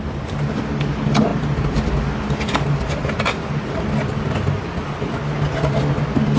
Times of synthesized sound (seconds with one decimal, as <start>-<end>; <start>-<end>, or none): none